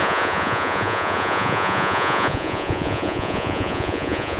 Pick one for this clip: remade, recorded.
remade